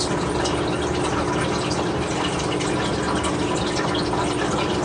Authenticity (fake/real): real